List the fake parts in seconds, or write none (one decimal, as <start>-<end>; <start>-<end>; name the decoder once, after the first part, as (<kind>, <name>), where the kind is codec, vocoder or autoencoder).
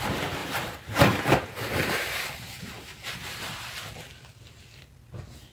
0.4-3.6 (vocoder, BigVGAN v2)